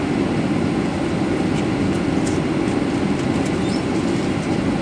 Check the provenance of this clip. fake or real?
real